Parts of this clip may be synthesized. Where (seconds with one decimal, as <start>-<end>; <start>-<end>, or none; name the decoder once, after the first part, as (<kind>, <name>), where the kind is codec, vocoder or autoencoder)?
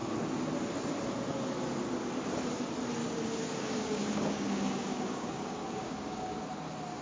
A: 3.0-6.4 (codec, DAC)